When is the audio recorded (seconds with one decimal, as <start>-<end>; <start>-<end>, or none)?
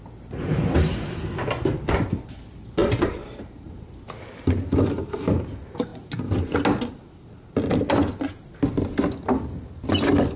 0.0-2.8; 3.9-10.4